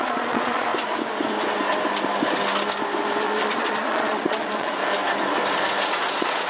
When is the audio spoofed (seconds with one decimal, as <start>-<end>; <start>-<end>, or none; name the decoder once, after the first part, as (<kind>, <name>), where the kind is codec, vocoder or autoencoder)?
0.0-0.7 (vocoder, Vocos); 3.2-4.8; 5.9-6.5